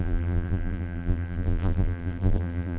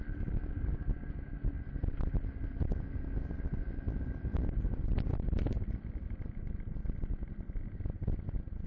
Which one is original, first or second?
second